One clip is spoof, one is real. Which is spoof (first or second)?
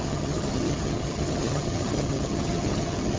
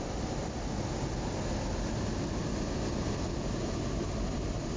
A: first